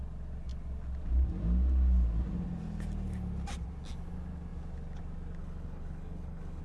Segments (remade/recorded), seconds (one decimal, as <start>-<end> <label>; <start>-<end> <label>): 0.0-5.4 recorded; 5.4-6.6 remade